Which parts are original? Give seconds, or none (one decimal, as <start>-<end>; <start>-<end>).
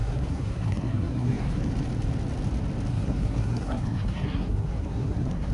1.7-2.9